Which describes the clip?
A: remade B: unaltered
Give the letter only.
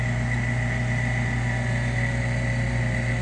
B